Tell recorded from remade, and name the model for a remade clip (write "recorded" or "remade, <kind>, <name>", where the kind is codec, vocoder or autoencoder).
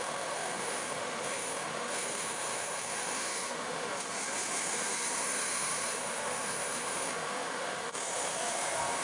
remade, autoencoder, DAC-VAE